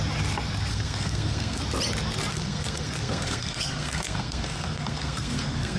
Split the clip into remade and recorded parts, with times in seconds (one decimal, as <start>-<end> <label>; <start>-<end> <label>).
0.0-0.7 recorded; 0.7-1.6 remade; 1.6-2.3 recorded; 2.3-5.8 remade